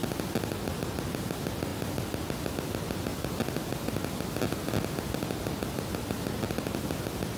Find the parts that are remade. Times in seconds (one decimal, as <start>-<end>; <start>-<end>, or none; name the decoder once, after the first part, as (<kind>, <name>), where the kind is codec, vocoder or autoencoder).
none